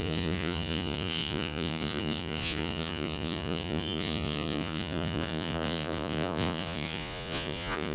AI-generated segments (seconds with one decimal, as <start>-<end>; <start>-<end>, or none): 0.0-7.9